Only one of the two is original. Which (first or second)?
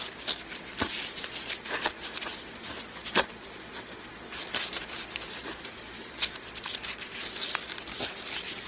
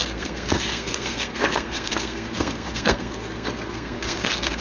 first